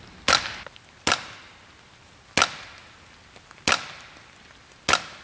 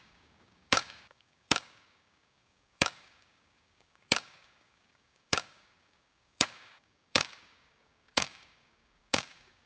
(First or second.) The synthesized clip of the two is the second